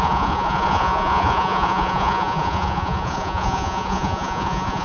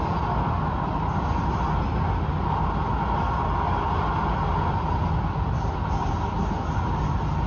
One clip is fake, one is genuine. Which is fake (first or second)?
first